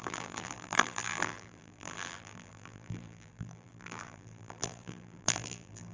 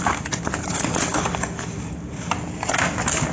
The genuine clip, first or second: second